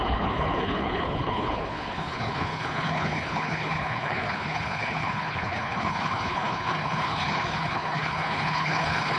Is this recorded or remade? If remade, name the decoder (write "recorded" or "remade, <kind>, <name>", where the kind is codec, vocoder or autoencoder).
remade, codec, HILCodec